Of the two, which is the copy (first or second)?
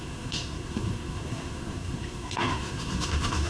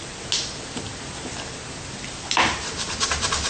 first